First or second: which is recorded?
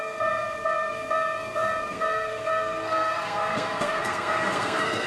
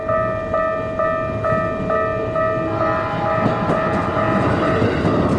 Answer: second